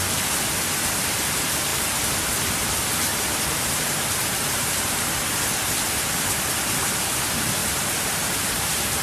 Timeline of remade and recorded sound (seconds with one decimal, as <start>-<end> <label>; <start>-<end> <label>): 0.0-3.1 recorded; 3.1-5.0 remade; 5.0-7.6 recorded; 7.6-9.0 remade